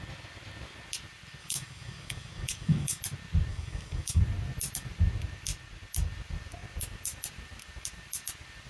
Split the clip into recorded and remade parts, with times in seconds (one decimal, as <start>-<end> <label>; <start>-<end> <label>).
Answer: 0.0-1.4 recorded; 1.4-3.0 remade; 3.0-3.5 recorded; 3.5-4.2 remade; 4.2-8.7 recorded